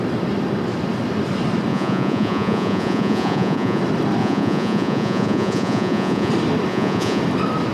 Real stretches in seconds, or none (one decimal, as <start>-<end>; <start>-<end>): 0.0-1.7; 3.8-4.2; 6.3-6.7; 7.2-7.7